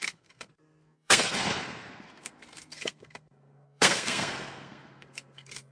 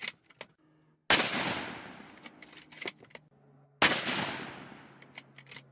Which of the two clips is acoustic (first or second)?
second